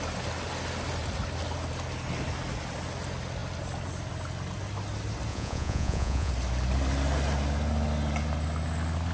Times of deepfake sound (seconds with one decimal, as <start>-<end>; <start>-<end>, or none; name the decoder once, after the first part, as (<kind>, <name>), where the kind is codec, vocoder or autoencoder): 5.3-6.3 (vocoder, Vocos)